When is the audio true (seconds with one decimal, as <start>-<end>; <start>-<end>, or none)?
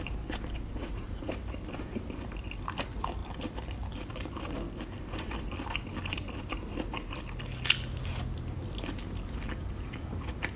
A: 0.0-0.8; 1.3-10.6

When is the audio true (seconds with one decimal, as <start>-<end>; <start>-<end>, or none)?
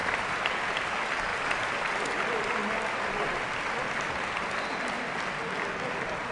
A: 0.6-1.3; 2.2-6.3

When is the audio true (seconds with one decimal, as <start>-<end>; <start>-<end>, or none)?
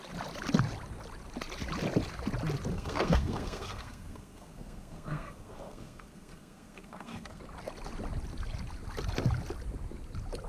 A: 0.0-2.7; 7.4-10.5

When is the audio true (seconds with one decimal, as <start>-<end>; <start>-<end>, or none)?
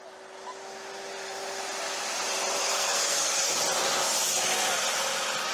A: 0.0-2.6; 3.5-5.5